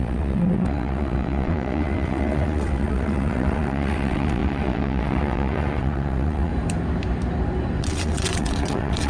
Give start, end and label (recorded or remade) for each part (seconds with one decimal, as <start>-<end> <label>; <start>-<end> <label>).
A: 0.0-6.5 remade; 6.5-7.8 recorded; 7.8-9.1 remade